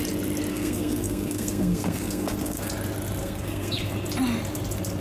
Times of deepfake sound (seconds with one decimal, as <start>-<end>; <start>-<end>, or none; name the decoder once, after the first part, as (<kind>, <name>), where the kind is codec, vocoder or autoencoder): 0.5-2.7 (codec, SNAC); 3.2-3.9